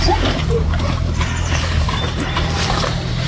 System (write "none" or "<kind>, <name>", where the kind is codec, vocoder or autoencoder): vocoder, BigVGAN v2